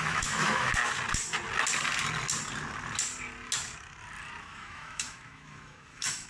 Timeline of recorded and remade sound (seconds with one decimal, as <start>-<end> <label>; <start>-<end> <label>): 0.0-0.8 remade; 0.8-4.4 recorded; 4.4-6.3 remade